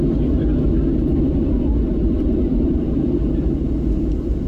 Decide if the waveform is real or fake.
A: real